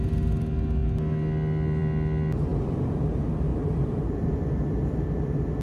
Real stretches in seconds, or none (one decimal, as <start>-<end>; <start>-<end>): 0.0-2.5; 3.0-3.5; 4.6-5.6